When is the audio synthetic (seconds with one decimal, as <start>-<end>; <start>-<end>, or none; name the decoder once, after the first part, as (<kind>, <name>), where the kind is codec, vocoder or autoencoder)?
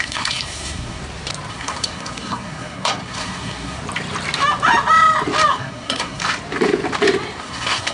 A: 0.0-1.0 (codec, SNAC); 1.5-3.8; 5.5-6.2; 7.4-7.9